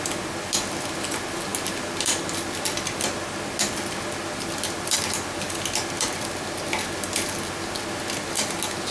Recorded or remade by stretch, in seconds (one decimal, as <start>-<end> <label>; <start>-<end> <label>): 0.0-8.9 recorded